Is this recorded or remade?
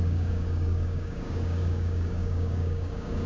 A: remade